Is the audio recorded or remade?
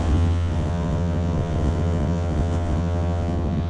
remade